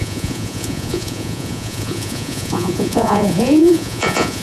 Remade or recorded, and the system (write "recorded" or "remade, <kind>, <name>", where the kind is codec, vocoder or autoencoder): remade, vocoder, Vocos